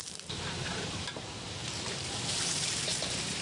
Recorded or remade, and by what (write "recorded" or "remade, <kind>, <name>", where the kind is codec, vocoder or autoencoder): remade, vocoder, BigVGAN v2